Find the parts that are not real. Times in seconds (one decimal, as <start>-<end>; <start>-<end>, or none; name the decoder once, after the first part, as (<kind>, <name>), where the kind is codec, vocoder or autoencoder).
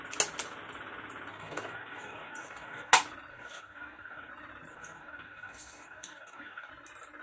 1.3-2.9 (codec, DAC); 3.3-4.3; 4.7-6.7